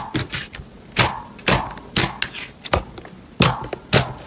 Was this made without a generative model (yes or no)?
yes